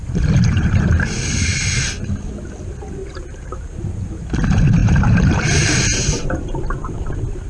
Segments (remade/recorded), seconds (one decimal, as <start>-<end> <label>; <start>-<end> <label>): 0.0-1.7 remade; 1.7-3.0 recorded; 3.0-3.7 remade; 3.7-4.8 recorded; 4.8-6.6 remade; 6.6-7.5 recorded